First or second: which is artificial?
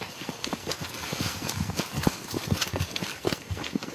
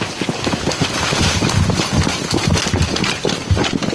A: first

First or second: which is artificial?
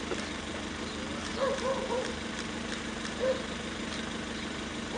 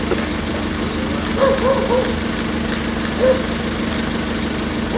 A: first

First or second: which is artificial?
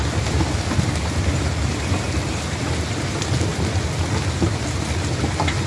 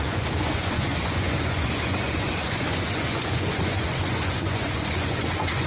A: second